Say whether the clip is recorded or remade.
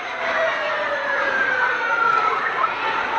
remade